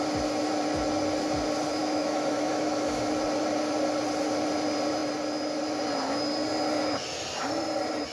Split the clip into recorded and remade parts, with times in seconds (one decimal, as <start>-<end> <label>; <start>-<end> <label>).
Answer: 0.0-1.8 recorded; 1.8-3.1 remade; 3.1-8.1 recorded